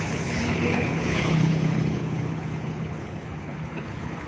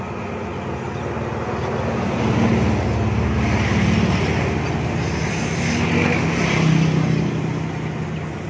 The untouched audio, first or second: second